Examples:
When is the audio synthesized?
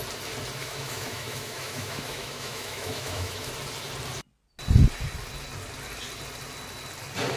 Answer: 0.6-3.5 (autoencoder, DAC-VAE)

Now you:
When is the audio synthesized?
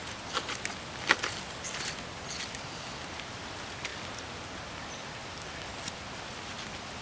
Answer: none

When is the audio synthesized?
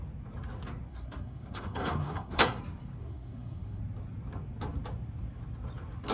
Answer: 0.9-2.6 (codec, SNAC); 3.0-3.8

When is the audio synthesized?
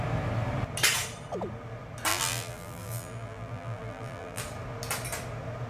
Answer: 2.1-4.4 (vocoder, BigVGAN v2)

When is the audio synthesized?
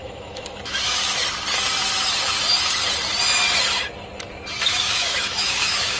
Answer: 0.0-1.0 (autoencoder, DAC-VAE); 4.6-6.0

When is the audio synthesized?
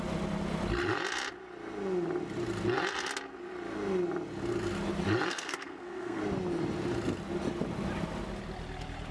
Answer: 5.3-6.2 (codec, SNAC)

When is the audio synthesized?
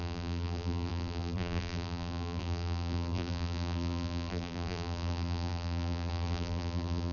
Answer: 0.0-7.1 (vocoder, BigVGAN v2)